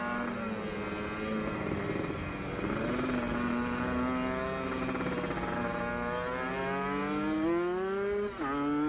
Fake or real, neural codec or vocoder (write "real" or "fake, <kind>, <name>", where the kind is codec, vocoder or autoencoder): real